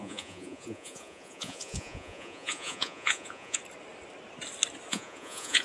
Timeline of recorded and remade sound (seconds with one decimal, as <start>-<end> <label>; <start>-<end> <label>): 0.0-3.6 remade; 3.6-4.9 recorded; 4.9-5.6 remade